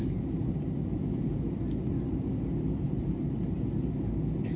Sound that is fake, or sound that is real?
real